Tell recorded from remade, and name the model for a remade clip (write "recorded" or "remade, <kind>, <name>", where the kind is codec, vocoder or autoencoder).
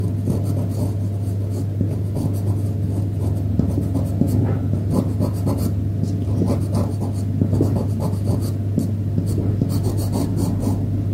recorded